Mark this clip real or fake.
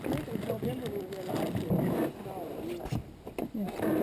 real